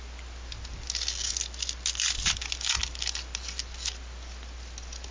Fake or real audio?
real